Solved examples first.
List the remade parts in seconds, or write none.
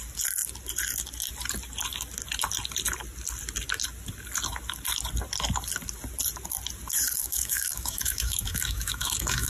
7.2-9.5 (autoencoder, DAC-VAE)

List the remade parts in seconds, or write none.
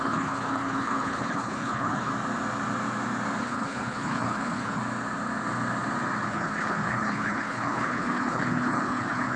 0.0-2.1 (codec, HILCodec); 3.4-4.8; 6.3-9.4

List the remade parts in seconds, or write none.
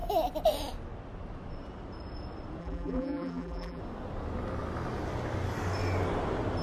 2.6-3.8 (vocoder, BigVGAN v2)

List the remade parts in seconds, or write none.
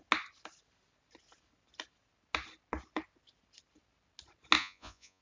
4.6-5.2 (vocoder, Vocos)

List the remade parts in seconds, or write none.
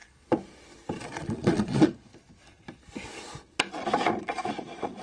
1.0-2.1 (vocoder, Vocos); 4.2-5.0